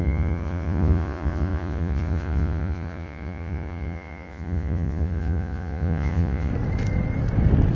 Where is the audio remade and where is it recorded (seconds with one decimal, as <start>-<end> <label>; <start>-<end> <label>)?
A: 0.0-6.5 remade; 6.5-7.8 recorded